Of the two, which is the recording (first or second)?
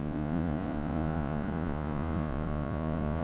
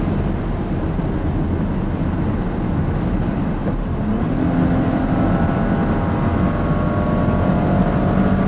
second